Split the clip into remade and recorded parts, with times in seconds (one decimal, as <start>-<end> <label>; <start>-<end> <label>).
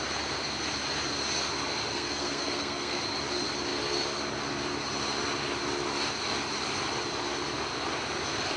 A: 0.0-1.9 recorded; 1.9-3.0 remade; 3.0-8.6 recorded